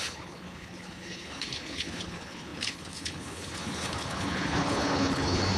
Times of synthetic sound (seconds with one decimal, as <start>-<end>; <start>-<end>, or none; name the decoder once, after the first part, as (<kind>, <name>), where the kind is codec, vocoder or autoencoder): 0.0-5.6 (codec, HILCodec)